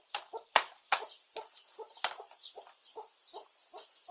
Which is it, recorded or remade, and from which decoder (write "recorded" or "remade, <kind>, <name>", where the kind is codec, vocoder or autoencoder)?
recorded